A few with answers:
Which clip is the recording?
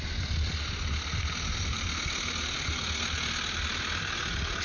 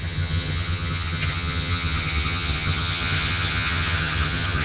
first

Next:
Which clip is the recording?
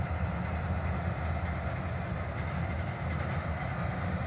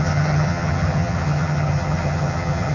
first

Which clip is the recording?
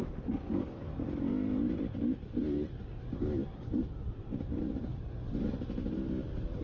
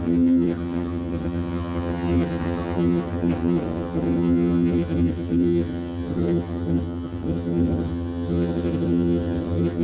first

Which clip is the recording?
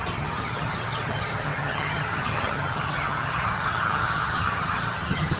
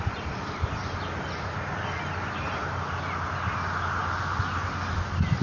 second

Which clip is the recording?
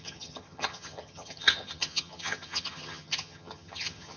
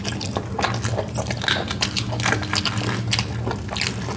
second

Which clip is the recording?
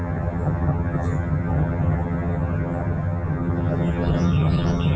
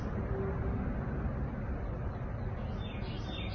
second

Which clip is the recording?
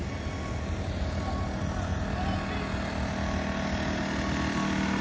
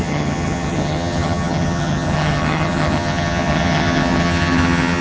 first